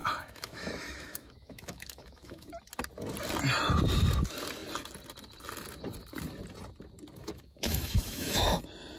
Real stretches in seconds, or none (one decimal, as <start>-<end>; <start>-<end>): 2.5-7.2; 8.6-9.0